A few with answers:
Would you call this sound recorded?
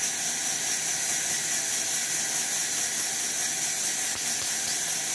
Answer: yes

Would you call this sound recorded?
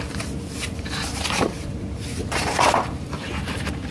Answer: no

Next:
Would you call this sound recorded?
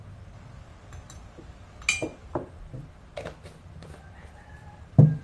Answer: yes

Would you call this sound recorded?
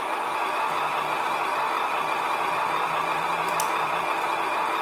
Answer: yes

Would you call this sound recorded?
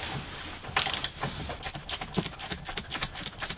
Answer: yes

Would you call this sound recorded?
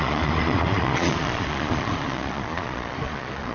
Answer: no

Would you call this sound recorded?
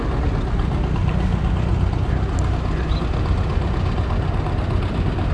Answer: yes